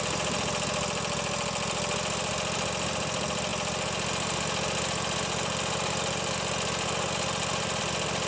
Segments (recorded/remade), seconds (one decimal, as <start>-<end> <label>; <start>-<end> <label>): 0.0-8.3 recorded